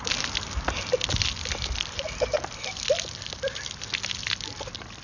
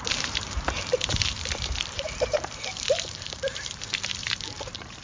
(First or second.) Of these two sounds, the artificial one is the second